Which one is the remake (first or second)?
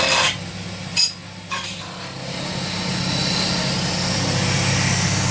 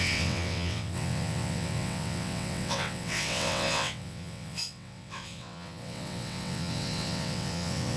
second